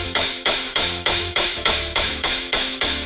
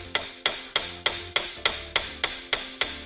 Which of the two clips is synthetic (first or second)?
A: first